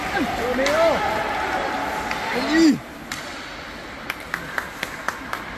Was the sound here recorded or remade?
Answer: recorded